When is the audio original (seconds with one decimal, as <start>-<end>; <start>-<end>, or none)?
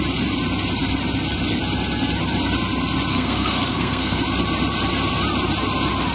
0.0-3.1; 4.2-6.1